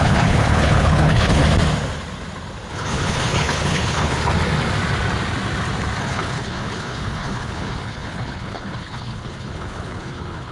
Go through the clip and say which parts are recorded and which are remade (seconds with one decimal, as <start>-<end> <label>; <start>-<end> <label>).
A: 0.0-1.4 remade; 1.4-2.7 recorded; 2.7-4.2 remade; 4.2-6.0 recorded; 6.0-10.5 remade